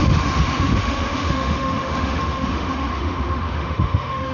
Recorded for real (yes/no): no